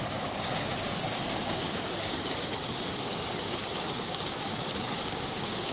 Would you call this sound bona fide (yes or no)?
no